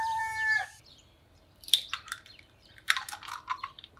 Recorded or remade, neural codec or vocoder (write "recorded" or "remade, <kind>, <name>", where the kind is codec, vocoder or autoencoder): remade, vocoder, BigVGAN v2